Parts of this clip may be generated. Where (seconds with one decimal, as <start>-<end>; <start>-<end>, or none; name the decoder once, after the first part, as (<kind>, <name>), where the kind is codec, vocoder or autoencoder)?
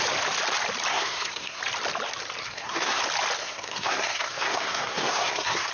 0.9-1.6 (codec, SNAC); 2.4-3.0; 3.4-5.7